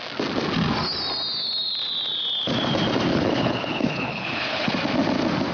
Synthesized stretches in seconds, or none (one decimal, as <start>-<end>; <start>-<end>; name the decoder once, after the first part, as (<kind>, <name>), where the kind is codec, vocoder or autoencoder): 3.1-4.7 (codec, HILCodec)